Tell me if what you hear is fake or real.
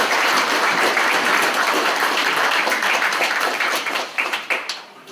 fake